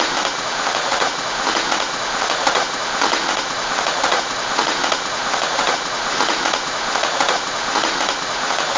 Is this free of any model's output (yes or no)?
no